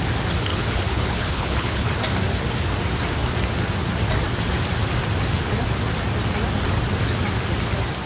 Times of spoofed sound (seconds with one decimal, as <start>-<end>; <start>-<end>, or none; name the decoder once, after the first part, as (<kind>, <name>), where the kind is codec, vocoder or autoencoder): 0.5-1.9 (codec, HILCodec)